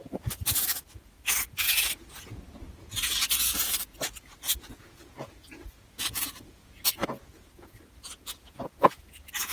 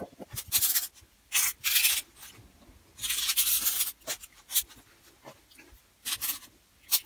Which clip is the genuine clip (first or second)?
second